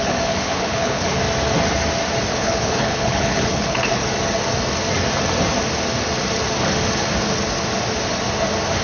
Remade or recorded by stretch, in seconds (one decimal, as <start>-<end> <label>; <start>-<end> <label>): 0.0-1.2 remade; 1.2-2.3 recorded; 2.3-4.0 remade; 4.0-8.8 recorded